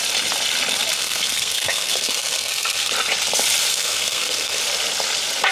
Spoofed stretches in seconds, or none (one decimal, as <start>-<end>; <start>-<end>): 1.0-2.9; 3.7-4.6